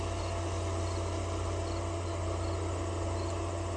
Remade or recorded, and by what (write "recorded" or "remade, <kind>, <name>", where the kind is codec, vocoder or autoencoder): recorded